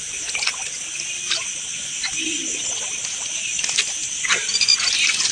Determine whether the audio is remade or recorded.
recorded